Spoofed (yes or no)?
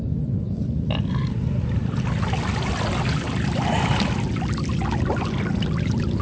no